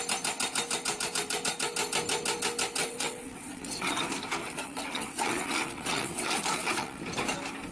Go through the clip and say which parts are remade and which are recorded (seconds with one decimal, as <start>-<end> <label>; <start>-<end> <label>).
0.0-2.8 recorded; 2.8-4.0 remade; 4.0-4.4 recorded; 4.4-7.0 remade; 7.0-7.7 recorded